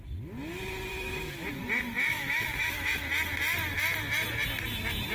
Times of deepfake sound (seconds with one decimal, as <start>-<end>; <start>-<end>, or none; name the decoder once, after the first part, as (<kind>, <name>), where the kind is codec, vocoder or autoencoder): 0.9-1.5 (autoencoder, DAC-VAE); 2.1-3.0